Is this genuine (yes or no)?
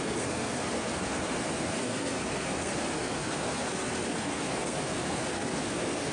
no